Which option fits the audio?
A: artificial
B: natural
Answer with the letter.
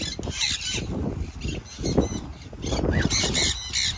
B